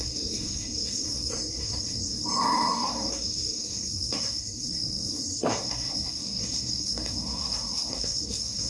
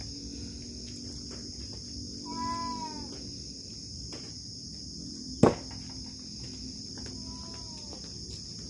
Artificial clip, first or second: first